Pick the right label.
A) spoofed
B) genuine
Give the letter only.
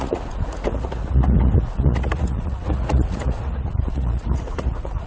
A